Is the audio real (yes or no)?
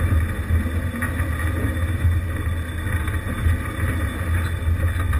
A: yes